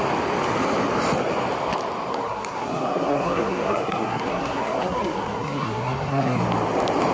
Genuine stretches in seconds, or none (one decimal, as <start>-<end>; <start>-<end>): 0.0-2.1; 6.4-7.1